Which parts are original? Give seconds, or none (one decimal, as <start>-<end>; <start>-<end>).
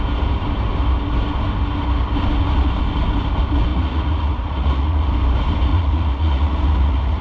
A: 0.0-3.7; 5.1-5.7